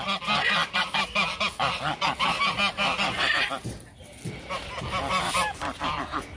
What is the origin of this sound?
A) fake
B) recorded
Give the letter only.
B